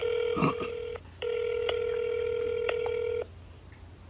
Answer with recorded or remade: recorded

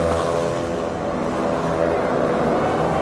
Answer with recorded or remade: recorded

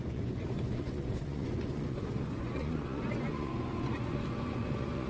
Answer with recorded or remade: remade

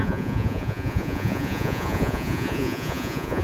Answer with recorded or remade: remade